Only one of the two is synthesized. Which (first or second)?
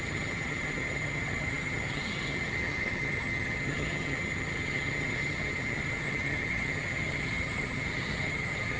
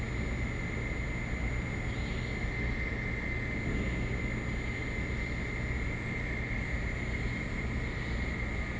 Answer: first